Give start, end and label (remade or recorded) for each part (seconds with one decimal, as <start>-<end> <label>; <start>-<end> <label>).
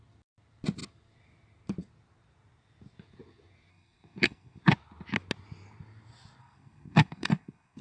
0.0-3.7 recorded; 3.7-4.6 remade; 4.6-6.4 recorded; 6.4-7.8 remade